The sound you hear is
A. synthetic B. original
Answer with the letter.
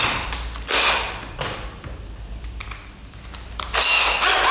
B